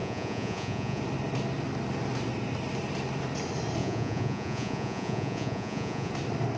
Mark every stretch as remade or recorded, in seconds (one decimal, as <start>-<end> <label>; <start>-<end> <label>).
0.0-1.0 remade; 1.0-3.8 recorded; 3.8-6.1 remade; 6.1-6.6 recorded